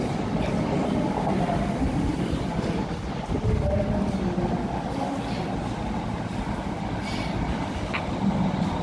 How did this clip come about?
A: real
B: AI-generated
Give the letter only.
A